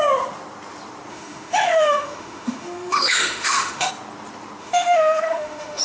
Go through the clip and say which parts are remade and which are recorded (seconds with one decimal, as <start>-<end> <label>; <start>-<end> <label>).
0.0-1.1 recorded; 1.1-3.9 remade; 3.9-4.6 recorded; 4.6-5.8 remade